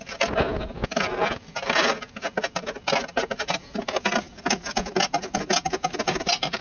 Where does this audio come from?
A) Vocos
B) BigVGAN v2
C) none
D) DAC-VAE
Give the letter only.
C